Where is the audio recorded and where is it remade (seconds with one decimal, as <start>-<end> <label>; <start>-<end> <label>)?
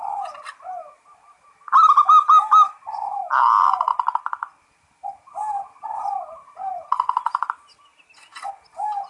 0.0-9.1 recorded